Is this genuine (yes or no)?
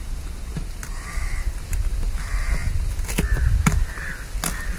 yes